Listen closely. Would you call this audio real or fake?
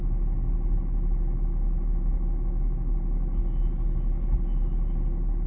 real